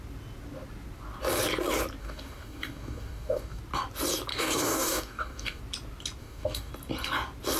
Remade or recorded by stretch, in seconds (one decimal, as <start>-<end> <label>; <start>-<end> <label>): 0.0-2.0 recorded; 2.0-3.6 remade; 3.6-4.3 recorded; 4.3-5.6 remade; 5.6-6.2 recorded; 6.2-6.7 remade; 6.7-7.6 recorded